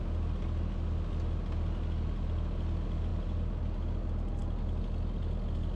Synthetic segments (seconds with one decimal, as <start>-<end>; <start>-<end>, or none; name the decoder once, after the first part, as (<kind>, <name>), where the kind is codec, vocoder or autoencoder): none